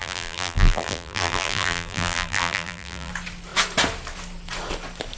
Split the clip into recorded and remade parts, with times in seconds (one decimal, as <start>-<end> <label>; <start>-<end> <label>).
0.0-3.1 remade; 3.1-5.2 recorded